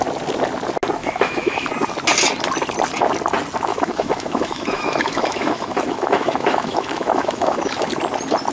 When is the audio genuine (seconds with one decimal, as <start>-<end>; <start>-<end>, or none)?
0.0-1.0; 1.7-3.7; 7.9-8.5